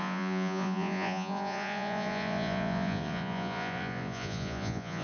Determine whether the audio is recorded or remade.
remade